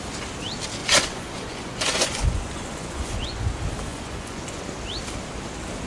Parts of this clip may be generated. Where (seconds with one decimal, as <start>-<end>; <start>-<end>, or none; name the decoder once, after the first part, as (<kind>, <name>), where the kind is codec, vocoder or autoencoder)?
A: 0.8-3.5 (vocoder, Vocos); 3.9-4.6